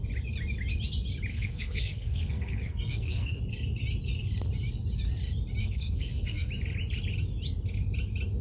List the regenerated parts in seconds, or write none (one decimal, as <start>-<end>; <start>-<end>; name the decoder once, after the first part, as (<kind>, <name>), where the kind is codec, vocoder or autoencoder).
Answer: 1.3-3.4 (codec, SNAC); 5.6-6.5